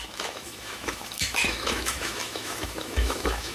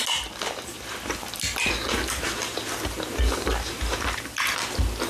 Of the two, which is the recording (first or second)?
second